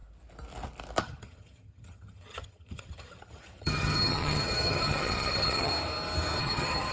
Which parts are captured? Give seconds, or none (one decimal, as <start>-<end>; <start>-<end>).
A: 0.0-1.0; 5.7-6.4